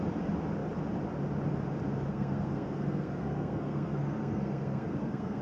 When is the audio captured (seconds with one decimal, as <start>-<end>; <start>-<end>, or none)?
0.0-2.1